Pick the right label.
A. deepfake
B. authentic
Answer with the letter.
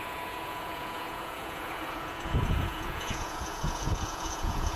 A